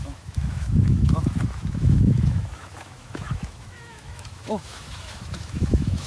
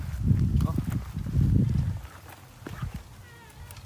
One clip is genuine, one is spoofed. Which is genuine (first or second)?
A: second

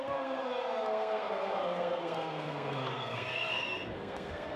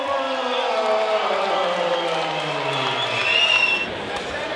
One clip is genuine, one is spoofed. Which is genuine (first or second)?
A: second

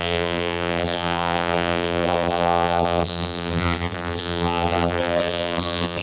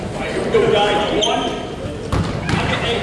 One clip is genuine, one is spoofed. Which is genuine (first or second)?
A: second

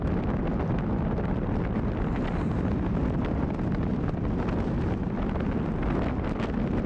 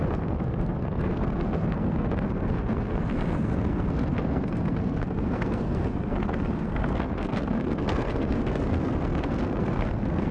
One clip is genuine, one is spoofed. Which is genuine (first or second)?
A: first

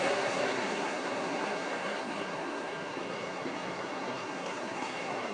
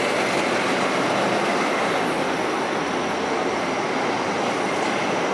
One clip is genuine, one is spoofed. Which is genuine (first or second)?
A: second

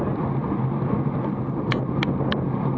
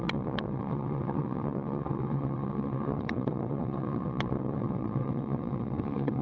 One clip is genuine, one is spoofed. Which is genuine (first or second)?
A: first